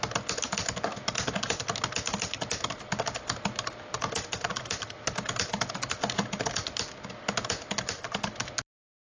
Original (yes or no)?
yes